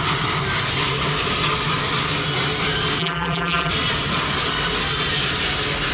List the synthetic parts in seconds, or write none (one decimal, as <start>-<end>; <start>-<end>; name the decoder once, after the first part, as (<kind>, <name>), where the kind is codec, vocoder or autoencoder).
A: 3.0-3.7 (vocoder, BigVGAN v2)